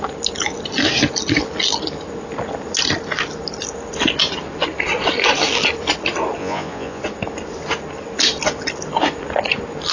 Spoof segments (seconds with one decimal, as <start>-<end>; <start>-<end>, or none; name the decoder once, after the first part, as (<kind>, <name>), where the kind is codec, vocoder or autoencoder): 6.4-7.0 (vocoder, Vocos)